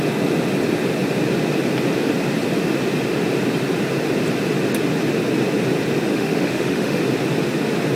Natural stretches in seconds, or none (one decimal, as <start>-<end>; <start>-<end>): 0.0-6.1; 7.0-8.0